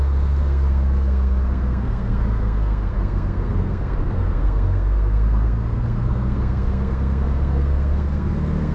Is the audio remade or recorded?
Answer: remade